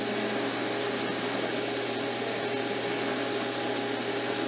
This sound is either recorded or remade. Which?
recorded